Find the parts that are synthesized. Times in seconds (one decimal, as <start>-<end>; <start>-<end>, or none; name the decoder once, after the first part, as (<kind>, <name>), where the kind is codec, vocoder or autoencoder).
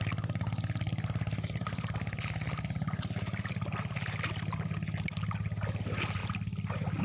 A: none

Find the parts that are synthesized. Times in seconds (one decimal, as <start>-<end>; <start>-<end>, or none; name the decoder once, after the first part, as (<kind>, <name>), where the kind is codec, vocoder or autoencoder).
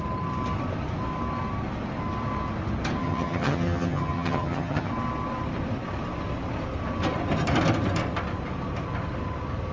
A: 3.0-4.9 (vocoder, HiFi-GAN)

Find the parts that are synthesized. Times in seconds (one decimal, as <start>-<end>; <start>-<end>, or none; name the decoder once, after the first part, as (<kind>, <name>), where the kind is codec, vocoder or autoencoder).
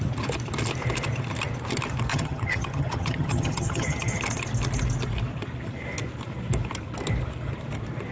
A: 2.1-4.2 (vocoder, HiFi-GAN)